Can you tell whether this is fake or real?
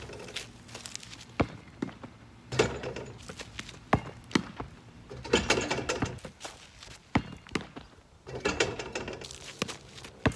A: real